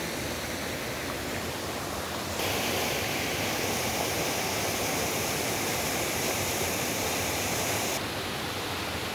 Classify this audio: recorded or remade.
remade